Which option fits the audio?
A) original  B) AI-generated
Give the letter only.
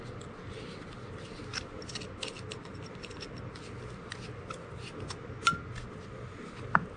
A